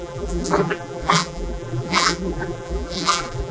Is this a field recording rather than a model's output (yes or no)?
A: no